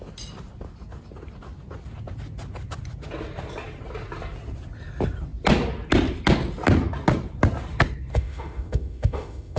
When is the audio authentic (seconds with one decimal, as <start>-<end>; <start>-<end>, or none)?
0.0-8.1